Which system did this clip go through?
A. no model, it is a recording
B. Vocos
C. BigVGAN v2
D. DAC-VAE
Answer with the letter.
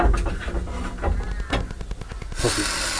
A